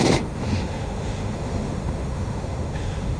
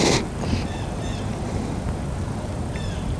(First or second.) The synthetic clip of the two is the first